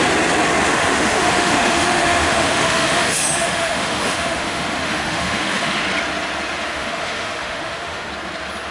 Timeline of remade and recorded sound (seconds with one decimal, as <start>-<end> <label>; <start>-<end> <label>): 0.0-0.7 recorded; 0.7-5.8 remade; 5.8-6.7 recorded; 6.7-8.1 remade; 8.1-8.7 recorded